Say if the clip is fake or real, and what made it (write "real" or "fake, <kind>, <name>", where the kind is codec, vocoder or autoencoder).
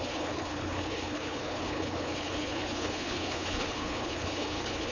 fake, codec, HILCodec